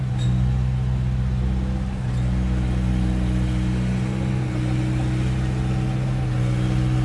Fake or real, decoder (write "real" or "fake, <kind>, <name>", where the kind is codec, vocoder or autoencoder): real